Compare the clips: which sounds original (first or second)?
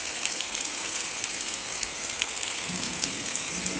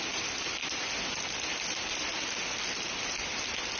second